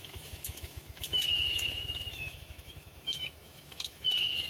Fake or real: fake